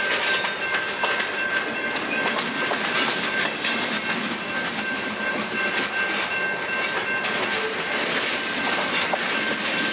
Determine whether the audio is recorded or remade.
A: recorded